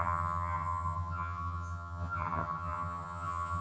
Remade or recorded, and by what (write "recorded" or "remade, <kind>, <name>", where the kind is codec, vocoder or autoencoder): remade, vocoder, HiFi-GAN